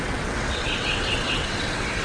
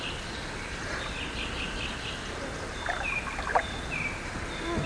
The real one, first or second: second